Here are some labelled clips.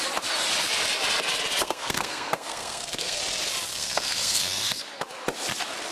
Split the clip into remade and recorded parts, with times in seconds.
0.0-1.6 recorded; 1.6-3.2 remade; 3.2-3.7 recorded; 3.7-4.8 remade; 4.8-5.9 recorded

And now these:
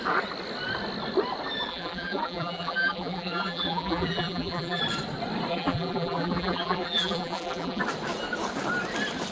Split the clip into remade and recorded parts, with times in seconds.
0.0-1.7 recorded; 1.7-4.8 remade; 4.8-5.5 recorded; 5.5-7.8 remade; 7.8-9.3 recorded

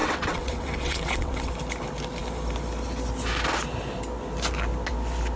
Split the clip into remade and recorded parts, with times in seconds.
0.0-1.5 remade; 1.5-5.4 recorded

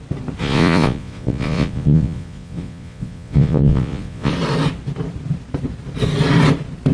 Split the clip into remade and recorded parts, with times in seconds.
0.0-0.4 recorded; 0.4-4.3 remade; 4.3-6.9 recorded

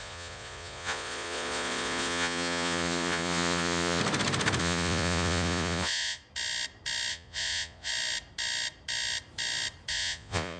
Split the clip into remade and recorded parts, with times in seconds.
0.0-4.0 remade; 4.0-4.6 recorded; 4.6-6.2 remade; 6.2-7.1 recorded; 7.1-7.9 remade; 7.9-9.9 recorded; 9.9-10.6 remade

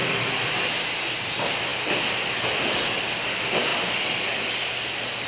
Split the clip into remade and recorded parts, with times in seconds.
0.0-0.7 remade; 0.7-5.3 recorded